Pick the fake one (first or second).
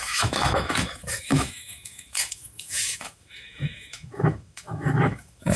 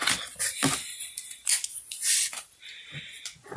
first